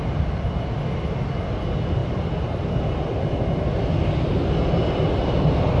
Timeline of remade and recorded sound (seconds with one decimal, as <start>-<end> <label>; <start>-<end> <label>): 0.0-5.8 recorded